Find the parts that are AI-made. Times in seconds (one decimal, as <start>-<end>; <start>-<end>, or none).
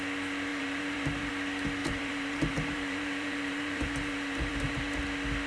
0.5-1.3; 1.8-5.0